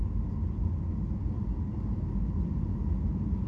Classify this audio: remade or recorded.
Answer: recorded